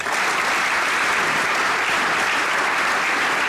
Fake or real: real